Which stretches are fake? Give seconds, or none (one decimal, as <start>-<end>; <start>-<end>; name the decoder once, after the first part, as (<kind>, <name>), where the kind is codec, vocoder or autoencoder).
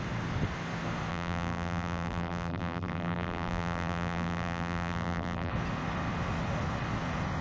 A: 1.1-5.5 (vocoder, BigVGAN v2)